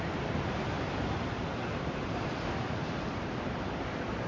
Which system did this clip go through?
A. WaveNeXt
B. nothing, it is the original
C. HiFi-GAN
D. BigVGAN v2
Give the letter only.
D